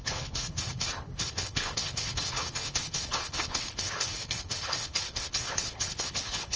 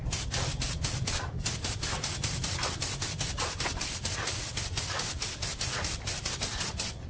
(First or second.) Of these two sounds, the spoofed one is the first